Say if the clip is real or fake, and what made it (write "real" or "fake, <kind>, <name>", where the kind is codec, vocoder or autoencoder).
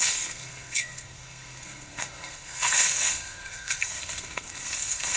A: fake, codec, SNAC